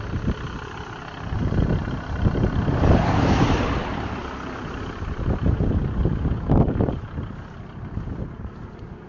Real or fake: real